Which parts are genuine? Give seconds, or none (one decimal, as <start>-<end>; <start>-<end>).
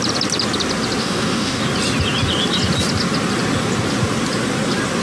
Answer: 0.0-1.0; 1.6-5.0